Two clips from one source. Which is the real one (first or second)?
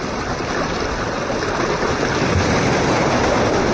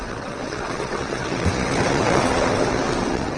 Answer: first